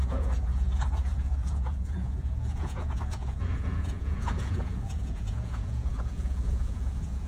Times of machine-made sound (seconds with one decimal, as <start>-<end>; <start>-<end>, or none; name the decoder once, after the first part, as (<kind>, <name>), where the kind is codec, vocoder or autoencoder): 0.0-7.3 (vocoder, Vocos)